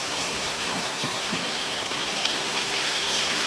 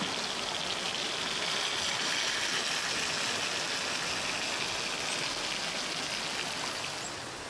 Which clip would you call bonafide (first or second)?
second